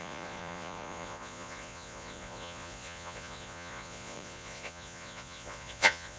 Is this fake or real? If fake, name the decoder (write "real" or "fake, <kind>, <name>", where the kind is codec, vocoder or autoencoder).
fake, vocoder, Vocos